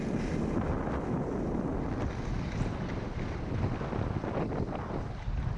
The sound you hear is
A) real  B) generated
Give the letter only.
A